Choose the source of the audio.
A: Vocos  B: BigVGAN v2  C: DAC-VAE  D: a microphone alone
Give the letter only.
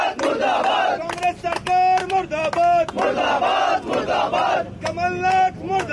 D